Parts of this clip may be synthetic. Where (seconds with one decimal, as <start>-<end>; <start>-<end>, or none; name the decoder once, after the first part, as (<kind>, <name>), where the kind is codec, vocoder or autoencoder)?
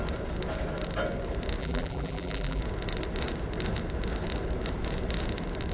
1.6-2.6 (vocoder, BigVGAN v2)